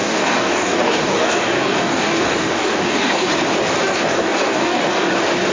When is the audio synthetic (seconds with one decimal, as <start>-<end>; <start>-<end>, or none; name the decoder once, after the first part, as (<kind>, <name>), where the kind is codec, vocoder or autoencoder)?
0.0-3.3 (codec, DAC); 3.9-5.1